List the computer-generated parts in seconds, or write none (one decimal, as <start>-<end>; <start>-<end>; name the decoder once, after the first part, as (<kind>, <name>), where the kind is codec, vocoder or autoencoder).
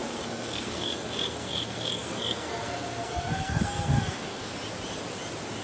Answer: 0.0-4.5 (codec, SNAC)